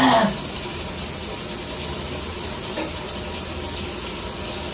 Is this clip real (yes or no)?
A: yes